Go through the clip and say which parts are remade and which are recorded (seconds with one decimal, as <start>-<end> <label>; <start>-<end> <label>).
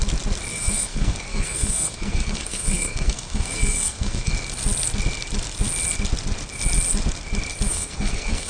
0.0-0.5 recorded; 0.5-4.3 remade; 4.3-7.7 recorded; 7.7-8.5 remade